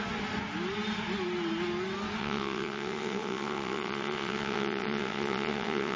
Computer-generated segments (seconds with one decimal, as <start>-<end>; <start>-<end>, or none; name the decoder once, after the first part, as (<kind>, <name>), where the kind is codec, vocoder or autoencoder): 2.2-6.0 (vocoder, WaveNeXt)